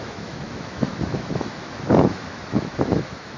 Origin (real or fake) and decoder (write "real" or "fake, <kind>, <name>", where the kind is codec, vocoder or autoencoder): fake, autoencoder, DAC-VAE